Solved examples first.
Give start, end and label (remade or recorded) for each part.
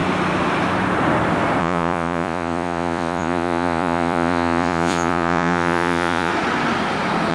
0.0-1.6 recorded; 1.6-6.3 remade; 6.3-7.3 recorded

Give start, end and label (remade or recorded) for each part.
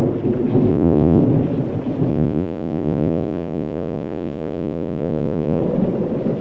0.0-0.7 recorded; 0.7-1.2 remade; 1.2-2.1 recorded; 2.1-5.6 remade; 5.6-6.4 recorded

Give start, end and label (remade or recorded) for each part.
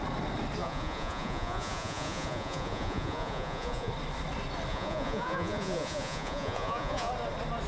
0.0-0.6 recorded; 0.6-3.9 remade; 3.9-4.7 recorded; 4.7-7.1 remade; 7.1-7.7 recorded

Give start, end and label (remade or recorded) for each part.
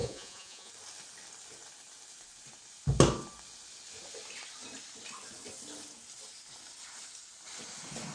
0.0-0.7 remade; 0.7-8.1 recorded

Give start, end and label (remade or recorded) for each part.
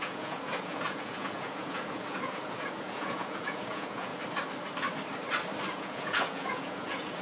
0.0-4.1 remade; 4.1-5.7 recorded; 5.7-7.2 remade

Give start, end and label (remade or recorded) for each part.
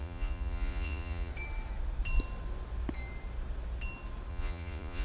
0.0-1.3 remade; 1.3-4.3 recorded; 4.3-5.0 remade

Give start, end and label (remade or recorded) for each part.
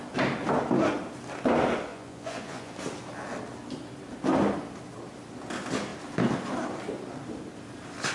0.0-1.9 recorded; 1.9-2.7 remade; 2.7-8.1 recorded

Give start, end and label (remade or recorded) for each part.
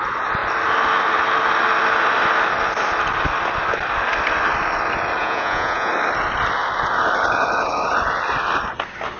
0.0-5.2 recorded; 5.2-5.9 remade; 5.9-9.2 recorded